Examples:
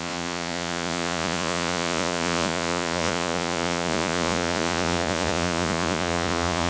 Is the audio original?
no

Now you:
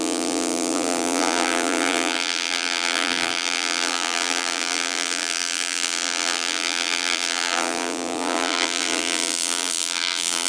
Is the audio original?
no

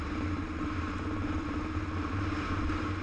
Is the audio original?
no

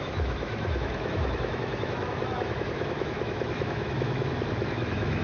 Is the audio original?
no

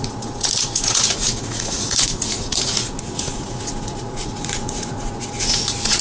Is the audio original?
no